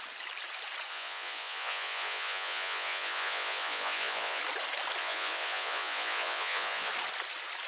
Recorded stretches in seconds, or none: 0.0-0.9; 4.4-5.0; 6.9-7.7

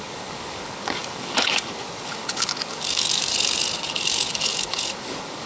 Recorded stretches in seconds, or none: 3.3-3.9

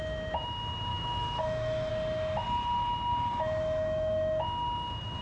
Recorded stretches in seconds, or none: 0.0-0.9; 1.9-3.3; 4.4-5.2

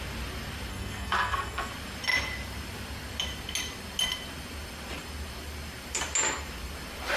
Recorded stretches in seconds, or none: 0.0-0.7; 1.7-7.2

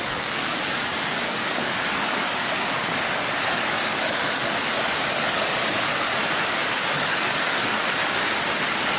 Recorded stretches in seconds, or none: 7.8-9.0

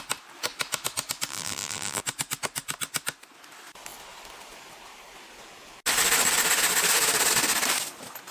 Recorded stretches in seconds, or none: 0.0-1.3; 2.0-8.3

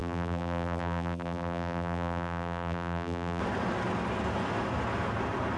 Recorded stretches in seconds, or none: 3.4-5.6

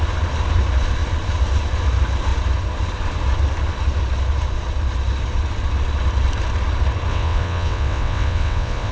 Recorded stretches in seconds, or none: 0.0-7.1